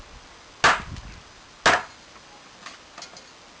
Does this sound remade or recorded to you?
recorded